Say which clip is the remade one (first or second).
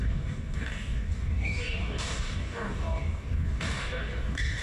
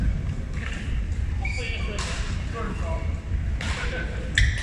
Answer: first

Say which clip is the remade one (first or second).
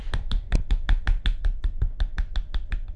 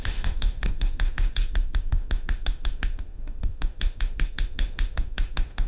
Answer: second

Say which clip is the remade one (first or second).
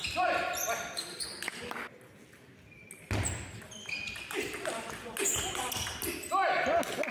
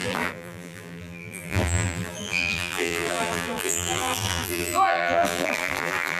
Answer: second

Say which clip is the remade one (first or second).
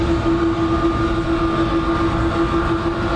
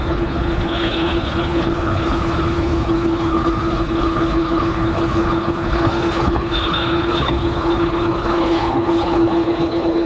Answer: second